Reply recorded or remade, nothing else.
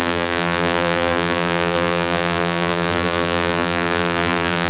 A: remade